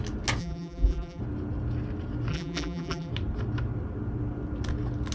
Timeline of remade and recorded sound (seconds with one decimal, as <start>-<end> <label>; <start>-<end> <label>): 0.0-0.4 recorded; 0.4-1.2 remade; 1.2-2.3 recorded; 2.3-3.1 remade; 3.1-5.1 recorded